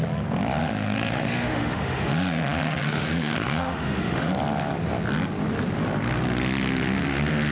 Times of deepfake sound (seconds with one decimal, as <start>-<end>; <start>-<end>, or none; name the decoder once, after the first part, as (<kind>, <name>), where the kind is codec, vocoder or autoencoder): 0.6-4.3 (autoencoder, DAC-VAE)